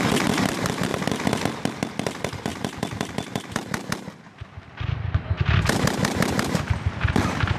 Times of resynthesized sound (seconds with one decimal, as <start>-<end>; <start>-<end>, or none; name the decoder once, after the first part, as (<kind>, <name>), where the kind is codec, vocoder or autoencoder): 0.0-0.9 (vocoder, BigVGAN v2); 1.9-2.5; 7.1-7.6